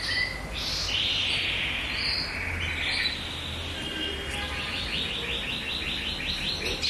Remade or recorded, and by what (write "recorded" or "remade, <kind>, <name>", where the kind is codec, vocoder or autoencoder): recorded